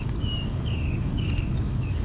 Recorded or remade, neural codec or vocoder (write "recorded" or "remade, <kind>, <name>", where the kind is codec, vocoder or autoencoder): remade, codec, DAC